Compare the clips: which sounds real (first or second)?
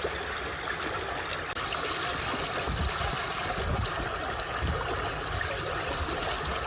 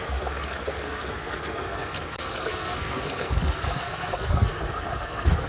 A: first